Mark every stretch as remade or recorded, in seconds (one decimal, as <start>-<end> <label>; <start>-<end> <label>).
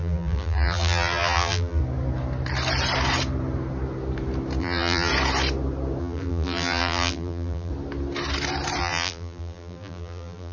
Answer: 0.0-1.8 remade; 1.8-4.6 recorded; 4.6-5.1 remade; 5.1-6.0 recorded; 6.0-7.7 remade; 7.7-8.8 recorded; 8.8-10.5 remade